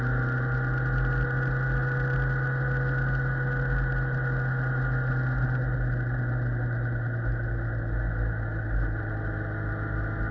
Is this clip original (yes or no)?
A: yes